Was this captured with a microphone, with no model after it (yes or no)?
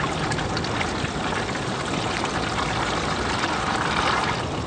yes